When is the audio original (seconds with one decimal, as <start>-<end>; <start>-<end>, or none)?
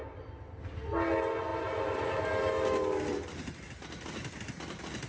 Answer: 0.0-5.1